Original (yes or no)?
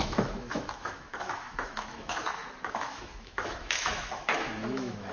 no